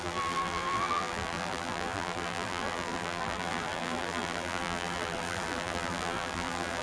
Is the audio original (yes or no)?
no